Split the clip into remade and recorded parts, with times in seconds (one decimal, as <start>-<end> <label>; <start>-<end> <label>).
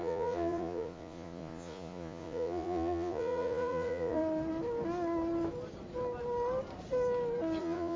0.0-4.2 remade; 4.2-7.6 recorded; 7.6-8.0 remade